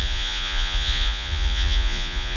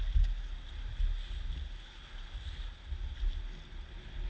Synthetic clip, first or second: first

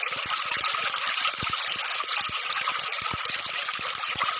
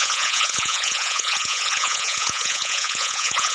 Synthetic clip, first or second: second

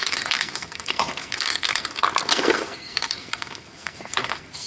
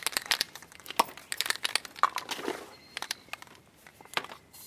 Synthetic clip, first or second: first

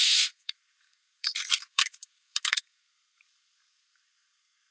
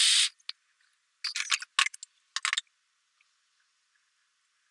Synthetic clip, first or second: first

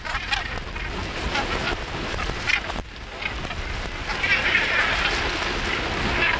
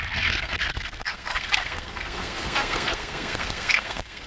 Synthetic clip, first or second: second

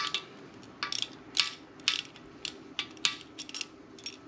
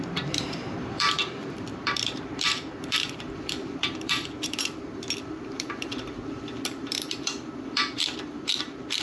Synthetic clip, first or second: second